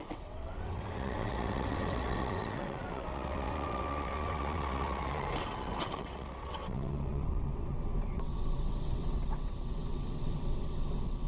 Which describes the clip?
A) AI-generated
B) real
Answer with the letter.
A